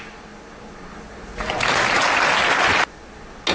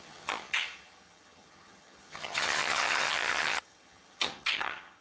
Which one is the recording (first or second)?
first